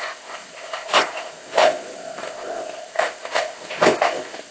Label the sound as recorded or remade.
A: remade